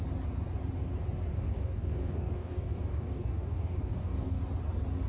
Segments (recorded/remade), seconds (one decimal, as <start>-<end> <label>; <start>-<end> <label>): 0.0-1.3 recorded; 1.3-4.4 remade; 4.4-5.1 recorded